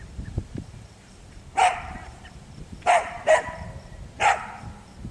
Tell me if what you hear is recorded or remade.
remade